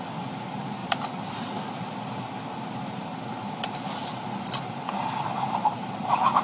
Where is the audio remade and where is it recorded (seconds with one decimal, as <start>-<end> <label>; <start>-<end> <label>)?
0.0-5.0 recorded; 5.0-6.4 remade